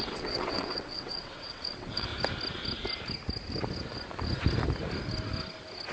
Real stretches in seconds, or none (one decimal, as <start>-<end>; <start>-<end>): 2.1-5.9

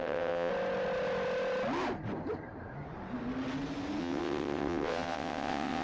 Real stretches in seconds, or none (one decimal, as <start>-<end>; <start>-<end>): 0.5-4.0

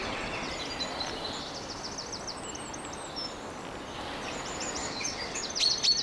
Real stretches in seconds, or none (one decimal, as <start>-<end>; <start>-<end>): 0.5-4.8; 5.4-6.0

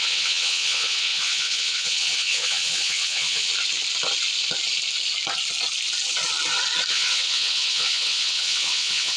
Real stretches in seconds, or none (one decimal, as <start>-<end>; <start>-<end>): 3.5-6.9